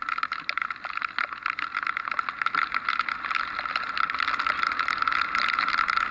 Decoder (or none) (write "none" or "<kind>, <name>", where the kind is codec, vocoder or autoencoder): none